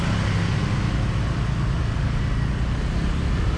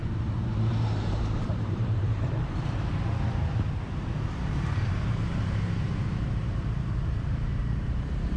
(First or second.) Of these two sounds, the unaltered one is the first